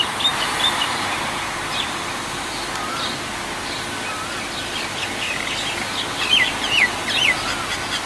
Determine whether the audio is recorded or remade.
remade